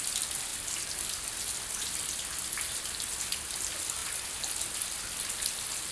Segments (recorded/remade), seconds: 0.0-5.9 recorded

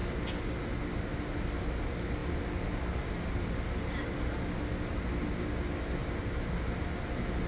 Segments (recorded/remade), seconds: 0.0-6.0 recorded; 6.0-6.5 remade; 6.5-7.5 recorded

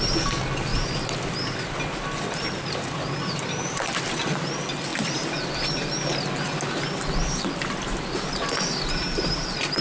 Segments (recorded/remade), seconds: 0.0-4.9 recorded; 4.9-5.5 remade; 5.5-9.8 recorded